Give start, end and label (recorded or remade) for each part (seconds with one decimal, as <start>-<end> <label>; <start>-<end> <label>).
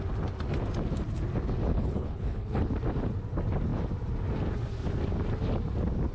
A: 0.0-1.7 recorded; 1.7-2.6 remade; 2.6-6.1 recorded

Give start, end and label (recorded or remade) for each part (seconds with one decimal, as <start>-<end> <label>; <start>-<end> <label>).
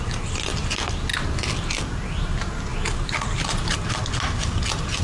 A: 0.0-5.0 recorded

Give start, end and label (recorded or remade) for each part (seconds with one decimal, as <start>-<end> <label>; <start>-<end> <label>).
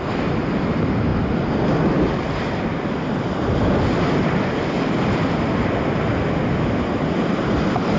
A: 0.0-1.1 remade; 1.1-2.6 recorded; 2.6-8.0 remade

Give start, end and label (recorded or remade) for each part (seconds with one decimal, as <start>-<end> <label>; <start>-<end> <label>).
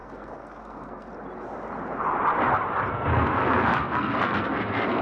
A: 0.0-1.1 remade; 1.1-2.9 recorded; 2.9-5.0 remade